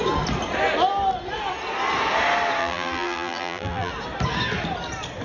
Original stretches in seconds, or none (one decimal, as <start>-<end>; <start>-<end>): 0.0-2.6; 3.9-5.2